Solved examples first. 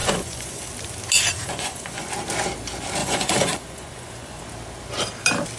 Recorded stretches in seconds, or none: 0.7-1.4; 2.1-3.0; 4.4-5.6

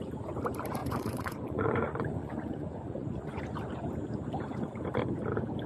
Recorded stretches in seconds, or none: 0.0-0.8; 3.4-5.7

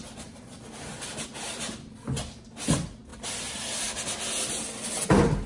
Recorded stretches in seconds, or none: 0.0-5.5

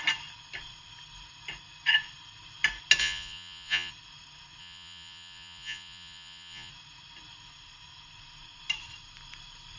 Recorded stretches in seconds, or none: 0.0-3.0; 3.9-4.6; 6.7-9.8

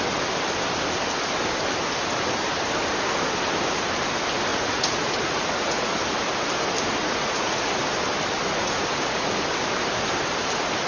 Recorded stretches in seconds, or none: 0.0-4.5; 5.9-7.0; 7.8-8.4; 9.3-10.9

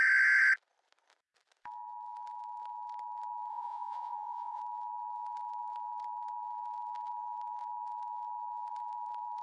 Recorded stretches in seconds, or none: 0.0-3.5; 4.6-9.4